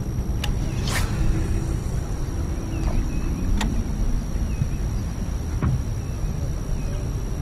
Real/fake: real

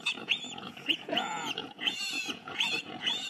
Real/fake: fake